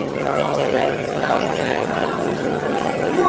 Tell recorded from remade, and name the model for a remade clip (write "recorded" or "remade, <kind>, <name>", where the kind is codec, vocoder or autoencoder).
remade, vocoder, HiFi-GAN